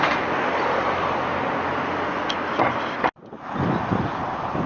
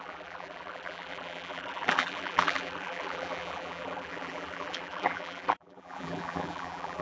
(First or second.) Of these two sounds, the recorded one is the first